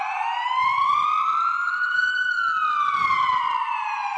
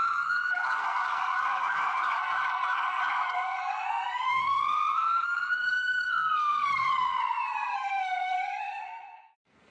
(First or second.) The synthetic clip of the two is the second